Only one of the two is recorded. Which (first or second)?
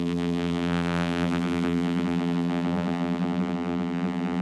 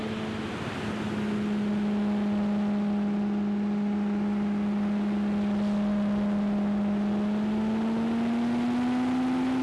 second